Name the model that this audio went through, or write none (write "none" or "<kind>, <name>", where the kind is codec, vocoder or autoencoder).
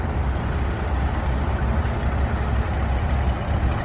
none